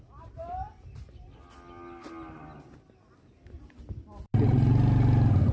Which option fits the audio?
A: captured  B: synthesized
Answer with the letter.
A